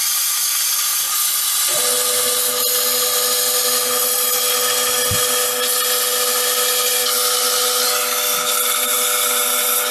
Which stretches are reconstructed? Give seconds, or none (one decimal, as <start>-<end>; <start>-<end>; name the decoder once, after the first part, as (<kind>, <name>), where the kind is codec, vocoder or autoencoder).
none